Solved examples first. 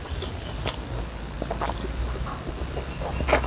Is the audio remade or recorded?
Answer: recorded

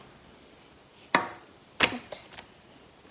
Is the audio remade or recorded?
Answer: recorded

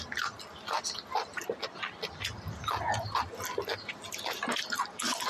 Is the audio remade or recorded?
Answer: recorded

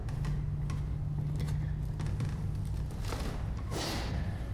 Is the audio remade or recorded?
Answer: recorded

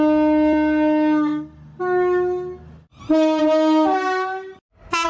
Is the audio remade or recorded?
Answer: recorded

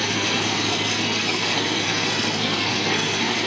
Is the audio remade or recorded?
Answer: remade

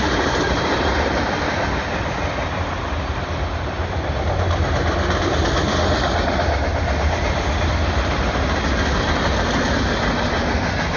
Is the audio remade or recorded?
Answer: recorded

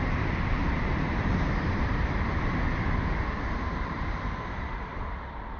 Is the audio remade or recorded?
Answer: remade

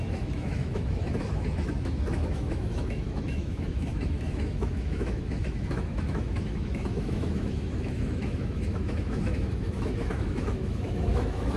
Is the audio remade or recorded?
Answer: remade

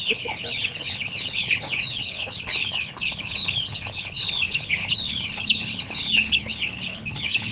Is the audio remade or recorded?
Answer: remade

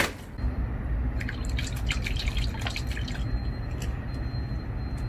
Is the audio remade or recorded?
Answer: recorded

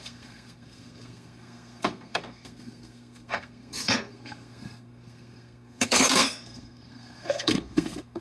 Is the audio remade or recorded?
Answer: remade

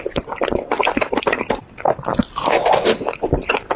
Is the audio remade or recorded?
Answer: recorded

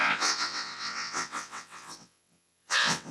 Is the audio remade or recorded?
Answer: remade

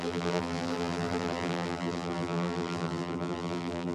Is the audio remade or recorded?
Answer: remade